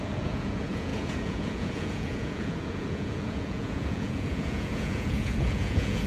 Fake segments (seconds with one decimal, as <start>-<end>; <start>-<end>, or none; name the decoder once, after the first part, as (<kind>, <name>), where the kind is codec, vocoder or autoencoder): 0.0-6.1 (vocoder, Vocos)